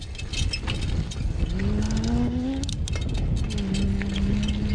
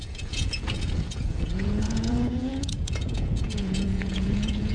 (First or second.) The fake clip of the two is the second